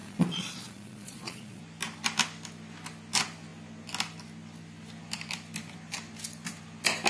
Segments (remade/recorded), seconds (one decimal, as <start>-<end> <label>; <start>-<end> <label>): 0.0-1.6 remade; 1.6-7.1 recorded